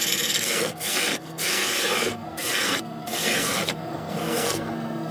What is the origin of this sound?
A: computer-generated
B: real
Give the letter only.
A